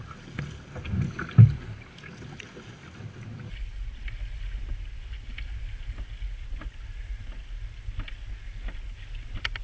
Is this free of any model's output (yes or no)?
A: yes